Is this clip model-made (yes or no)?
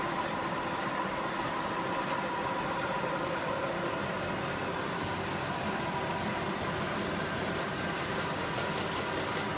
no